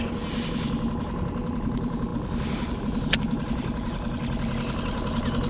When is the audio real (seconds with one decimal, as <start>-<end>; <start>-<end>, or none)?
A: 0.0-5.5